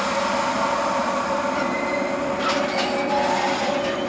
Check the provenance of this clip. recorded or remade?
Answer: remade